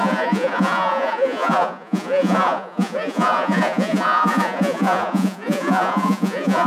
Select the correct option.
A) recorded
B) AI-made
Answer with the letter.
B